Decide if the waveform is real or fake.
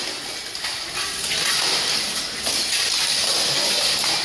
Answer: real